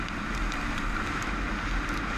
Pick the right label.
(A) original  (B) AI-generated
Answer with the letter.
A